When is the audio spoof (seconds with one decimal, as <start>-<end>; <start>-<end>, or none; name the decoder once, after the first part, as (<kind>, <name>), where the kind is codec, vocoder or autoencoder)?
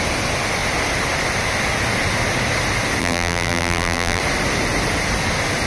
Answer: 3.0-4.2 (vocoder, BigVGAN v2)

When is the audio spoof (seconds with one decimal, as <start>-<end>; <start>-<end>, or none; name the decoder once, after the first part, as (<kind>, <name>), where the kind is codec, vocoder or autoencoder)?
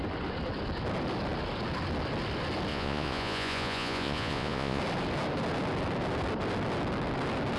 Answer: 2.7-4.8 (vocoder, Vocos)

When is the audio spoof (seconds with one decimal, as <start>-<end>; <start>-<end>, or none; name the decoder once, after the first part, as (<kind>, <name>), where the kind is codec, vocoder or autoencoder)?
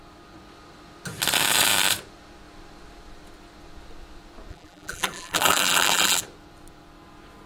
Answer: 4.5-6.2 (vocoder, BigVGAN v2)